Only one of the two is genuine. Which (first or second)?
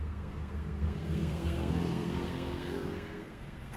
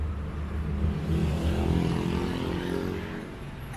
second